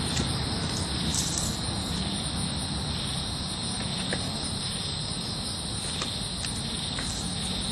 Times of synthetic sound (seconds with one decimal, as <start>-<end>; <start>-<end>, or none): 1.1-2.3; 3.6-5.1